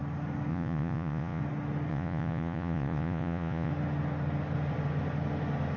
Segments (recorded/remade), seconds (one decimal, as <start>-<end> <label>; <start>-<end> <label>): 0.0-0.5 recorded; 0.5-1.4 remade; 1.4-1.9 recorded; 1.9-3.7 remade; 3.7-5.8 recorded